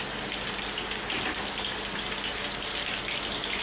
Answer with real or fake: real